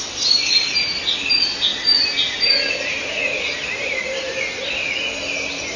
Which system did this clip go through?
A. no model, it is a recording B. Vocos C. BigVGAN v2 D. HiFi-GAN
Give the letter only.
A